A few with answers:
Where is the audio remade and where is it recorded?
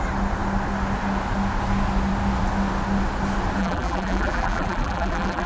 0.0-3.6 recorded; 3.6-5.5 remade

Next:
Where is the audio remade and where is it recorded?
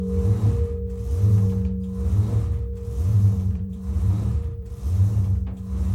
0.0-3.1 recorded; 3.1-4.7 remade; 4.7-5.9 recorded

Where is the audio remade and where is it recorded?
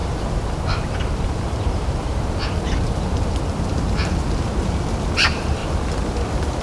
0.0-5.6 remade; 5.6-6.6 recorded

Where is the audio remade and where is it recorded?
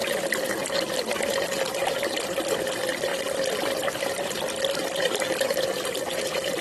0.0-6.6 recorded